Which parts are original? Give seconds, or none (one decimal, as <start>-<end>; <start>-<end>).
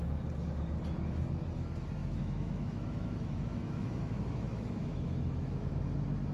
0.0-2.0; 5.8-6.3